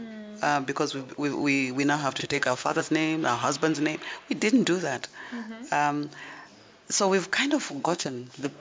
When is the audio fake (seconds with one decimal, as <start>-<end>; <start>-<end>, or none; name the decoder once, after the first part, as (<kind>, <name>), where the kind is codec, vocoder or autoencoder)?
2.2-2.8 (codec, SNAC); 7.7-8.6